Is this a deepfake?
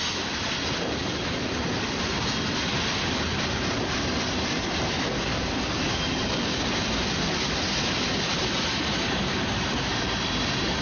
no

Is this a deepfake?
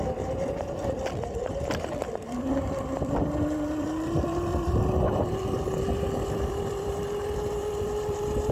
yes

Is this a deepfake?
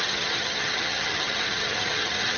yes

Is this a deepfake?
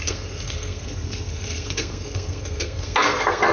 yes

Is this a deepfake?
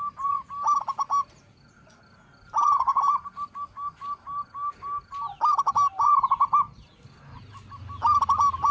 no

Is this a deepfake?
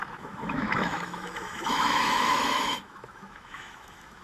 yes